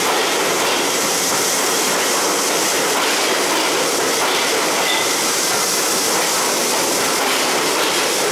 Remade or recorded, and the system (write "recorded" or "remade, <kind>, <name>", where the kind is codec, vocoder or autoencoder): remade, vocoder, BigVGAN v2